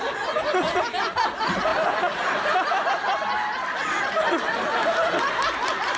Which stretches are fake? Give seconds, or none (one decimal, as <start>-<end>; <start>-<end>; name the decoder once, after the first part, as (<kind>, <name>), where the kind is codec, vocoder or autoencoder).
none